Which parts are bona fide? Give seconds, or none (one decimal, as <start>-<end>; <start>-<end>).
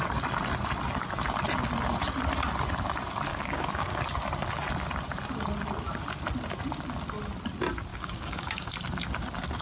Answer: 0.0-3.3; 4.0-7.9; 8.7-9.6